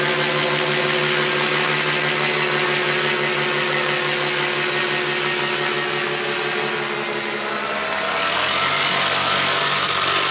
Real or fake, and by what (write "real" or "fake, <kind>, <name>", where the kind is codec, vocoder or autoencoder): real